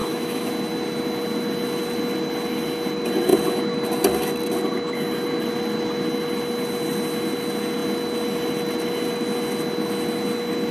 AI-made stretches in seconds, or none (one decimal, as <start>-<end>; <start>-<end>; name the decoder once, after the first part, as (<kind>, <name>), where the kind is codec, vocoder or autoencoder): 0.0-0.5 (autoencoder, DAC-VAE)